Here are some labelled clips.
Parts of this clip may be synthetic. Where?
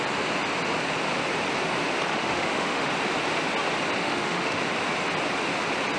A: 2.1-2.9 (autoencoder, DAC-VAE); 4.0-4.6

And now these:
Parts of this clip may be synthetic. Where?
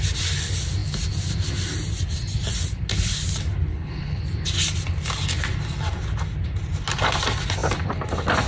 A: 3.7-4.2 (codec, HILCodec)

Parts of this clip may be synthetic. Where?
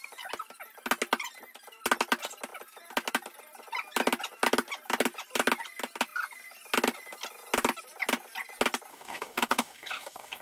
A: 8.9-10.4 (codec, DAC)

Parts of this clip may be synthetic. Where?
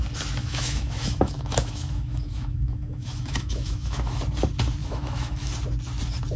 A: 0.4-4.2 (autoencoder, DAC-VAE); 4.8-5.5